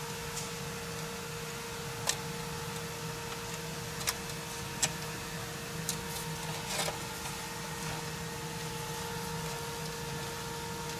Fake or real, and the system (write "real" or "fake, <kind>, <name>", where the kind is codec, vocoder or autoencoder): real